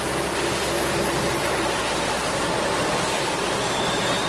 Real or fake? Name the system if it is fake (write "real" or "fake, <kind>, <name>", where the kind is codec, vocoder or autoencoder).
real